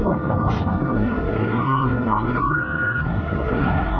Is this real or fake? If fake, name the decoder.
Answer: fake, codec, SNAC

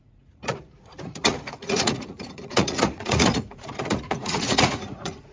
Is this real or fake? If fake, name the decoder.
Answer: fake, vocoder, Vocos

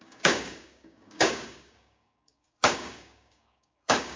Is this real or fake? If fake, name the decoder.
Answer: fake, codec, DAC